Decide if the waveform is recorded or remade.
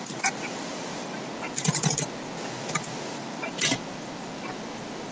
recorded